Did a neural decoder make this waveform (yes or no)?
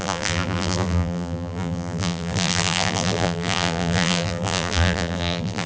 yes